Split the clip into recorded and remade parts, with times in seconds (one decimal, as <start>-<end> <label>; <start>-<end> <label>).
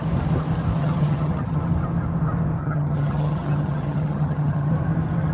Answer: 0.0-0.8 recorded; 0.8-1.6 remade; 1.6-2.6 recorded; 2.6-4.7 remade; 4.7-5.3 recorded